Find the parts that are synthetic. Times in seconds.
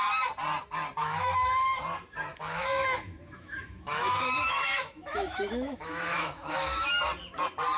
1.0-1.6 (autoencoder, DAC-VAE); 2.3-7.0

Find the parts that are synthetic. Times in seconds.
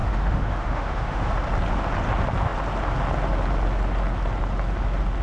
0.0-1.3 (autoencoder, DAC-VAE)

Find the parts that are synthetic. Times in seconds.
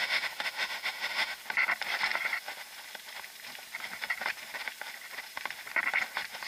0.0-1.4 (autoencoder, DAC-VAE)